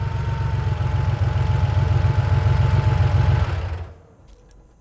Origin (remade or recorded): recorded